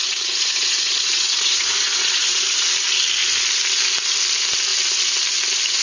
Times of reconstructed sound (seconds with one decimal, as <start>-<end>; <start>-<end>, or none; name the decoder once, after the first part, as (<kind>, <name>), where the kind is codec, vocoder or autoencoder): 0.0-2.7 (vocoder, Vocos)